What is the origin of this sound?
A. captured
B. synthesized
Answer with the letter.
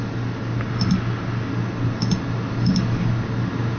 A